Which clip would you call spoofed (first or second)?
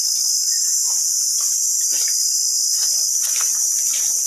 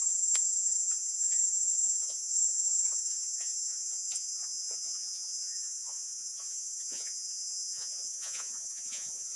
second